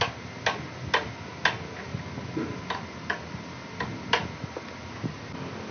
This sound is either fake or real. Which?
real